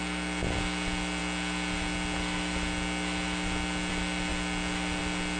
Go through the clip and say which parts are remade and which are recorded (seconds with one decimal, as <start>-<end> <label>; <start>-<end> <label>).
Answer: 0.0-5.4 recorded